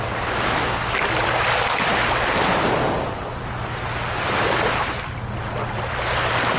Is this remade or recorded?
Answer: recorded